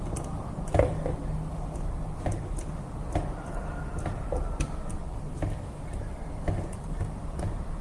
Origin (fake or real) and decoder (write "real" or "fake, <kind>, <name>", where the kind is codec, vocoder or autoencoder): real